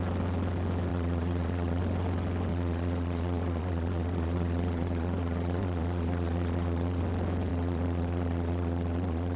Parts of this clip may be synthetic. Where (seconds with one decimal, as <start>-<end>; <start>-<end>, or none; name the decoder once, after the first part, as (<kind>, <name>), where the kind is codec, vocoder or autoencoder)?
0.9-1.8 (vocoder, Vocos); 2.5-7.0; 7.5-9.4